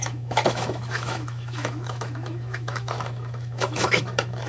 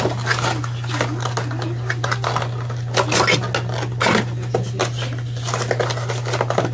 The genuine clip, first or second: second